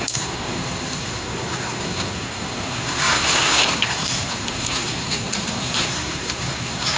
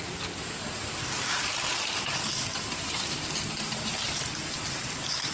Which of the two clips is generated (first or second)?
first